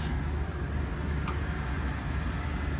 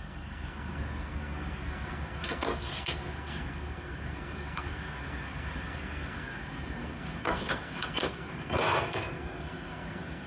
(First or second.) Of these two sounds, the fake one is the second